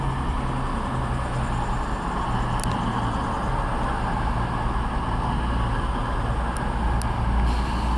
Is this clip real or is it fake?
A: real